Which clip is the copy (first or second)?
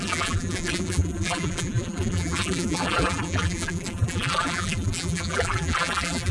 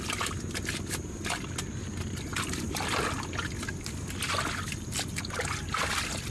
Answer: first